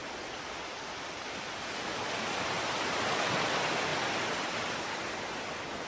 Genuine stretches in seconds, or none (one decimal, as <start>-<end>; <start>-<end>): 0.0-5.9

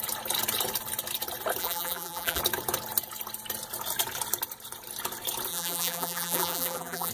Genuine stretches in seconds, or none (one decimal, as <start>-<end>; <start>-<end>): 0.0-1.6; 2.4-5.5

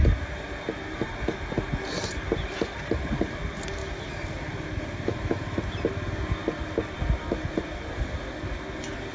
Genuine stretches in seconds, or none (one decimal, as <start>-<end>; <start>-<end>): 0.0-9.1